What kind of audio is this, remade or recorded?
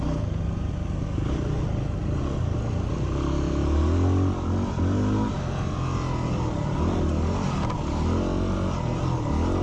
recorded